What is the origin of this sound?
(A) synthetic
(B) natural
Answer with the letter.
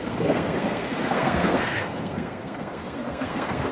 A